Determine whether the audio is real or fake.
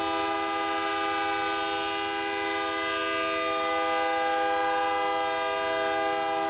real